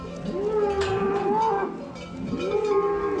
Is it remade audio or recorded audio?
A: recorded